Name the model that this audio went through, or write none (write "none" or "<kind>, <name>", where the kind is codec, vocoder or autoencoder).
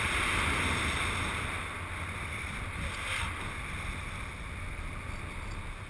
none